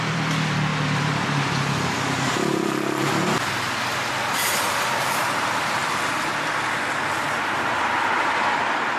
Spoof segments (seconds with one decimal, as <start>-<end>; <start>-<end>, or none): 0.0-5.8; 8.2-9.0